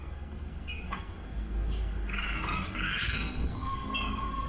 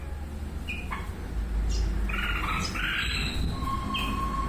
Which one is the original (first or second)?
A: second